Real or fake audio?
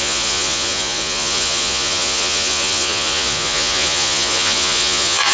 fake